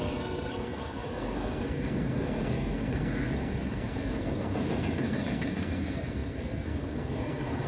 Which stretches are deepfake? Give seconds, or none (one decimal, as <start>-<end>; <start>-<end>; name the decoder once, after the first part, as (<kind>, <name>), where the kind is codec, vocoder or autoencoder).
0.0-7.7 (codec, SNAC)

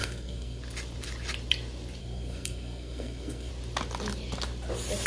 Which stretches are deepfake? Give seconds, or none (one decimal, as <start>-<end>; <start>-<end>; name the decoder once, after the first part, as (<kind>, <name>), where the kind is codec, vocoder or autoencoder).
0.0-0.6 (codec, SNAC); 2.0-3.5

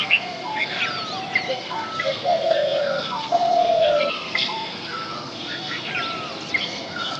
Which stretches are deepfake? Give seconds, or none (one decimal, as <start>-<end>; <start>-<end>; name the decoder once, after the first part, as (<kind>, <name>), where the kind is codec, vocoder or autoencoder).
0.0-0.8 (codec, SNAC); 1.5-5.9; 6.6-7.2

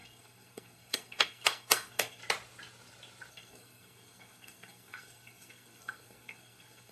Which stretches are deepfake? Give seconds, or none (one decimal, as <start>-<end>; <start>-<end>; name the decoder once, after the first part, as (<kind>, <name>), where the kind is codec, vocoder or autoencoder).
0.0-2.2 (codec, SNAC); 3.3-6.9

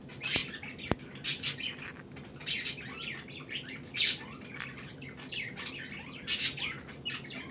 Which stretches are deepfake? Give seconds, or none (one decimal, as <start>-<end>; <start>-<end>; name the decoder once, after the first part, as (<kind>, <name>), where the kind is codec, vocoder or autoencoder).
none

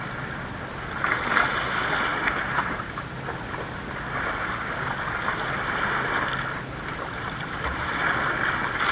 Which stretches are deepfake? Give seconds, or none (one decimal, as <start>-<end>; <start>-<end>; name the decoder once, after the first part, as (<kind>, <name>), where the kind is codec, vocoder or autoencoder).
none

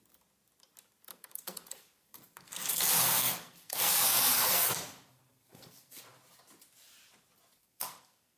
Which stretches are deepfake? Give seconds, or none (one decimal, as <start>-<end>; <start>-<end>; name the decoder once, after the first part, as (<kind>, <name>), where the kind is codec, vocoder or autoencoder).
1.1-6.0 (codec, SNAC); 7.6-8.4

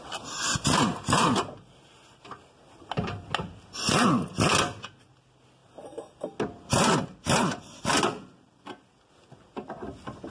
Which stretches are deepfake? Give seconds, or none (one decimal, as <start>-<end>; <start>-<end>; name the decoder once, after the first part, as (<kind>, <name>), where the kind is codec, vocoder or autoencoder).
none